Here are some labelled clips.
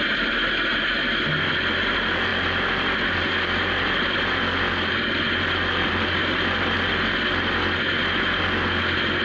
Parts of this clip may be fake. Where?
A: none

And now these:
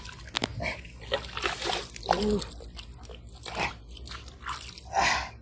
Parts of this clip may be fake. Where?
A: none

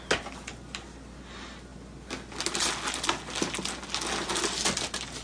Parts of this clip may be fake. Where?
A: none

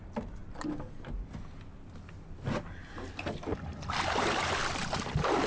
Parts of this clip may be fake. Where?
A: none

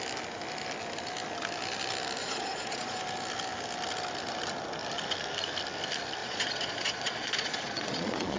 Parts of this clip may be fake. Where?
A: 2.2-3.0 (vocoder, Vocos); 6.2-8.4

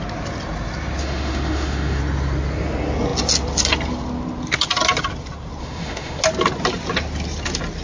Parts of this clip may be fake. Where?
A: 1.0-2.0 (autoencoder, DAC-VAE); 5.6-6.2

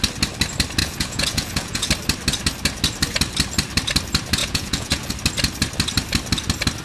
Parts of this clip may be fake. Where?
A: 0.8-1.9 (vocoder, Vocos); 4.4-5.1